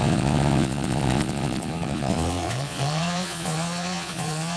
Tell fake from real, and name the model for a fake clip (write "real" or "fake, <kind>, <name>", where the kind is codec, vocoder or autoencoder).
fake, vocoder, Vocos